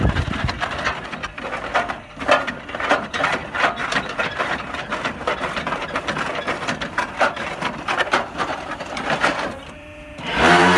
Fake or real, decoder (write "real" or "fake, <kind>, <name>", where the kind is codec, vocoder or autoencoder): fake, vocoder, BigVGAN v2